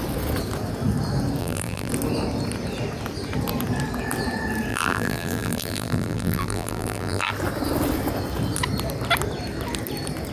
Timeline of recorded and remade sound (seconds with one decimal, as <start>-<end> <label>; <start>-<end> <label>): 0.0-1.4 recorded; 1.4-1.9 remade; 1.9-4.7 recorded; 4.7-7.3 remade; 7.3-10.3 recorded